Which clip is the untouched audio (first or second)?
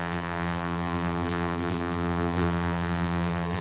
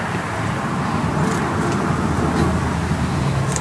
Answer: second